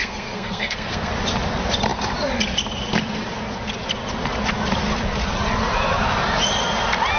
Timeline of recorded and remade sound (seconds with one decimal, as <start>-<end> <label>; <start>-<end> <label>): 0.0-1.1 remade; 1.1-7.2 recorded